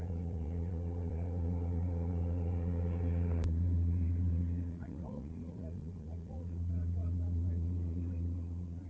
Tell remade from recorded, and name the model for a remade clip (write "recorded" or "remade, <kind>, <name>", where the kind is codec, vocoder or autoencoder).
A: remade, vocoder, Vocos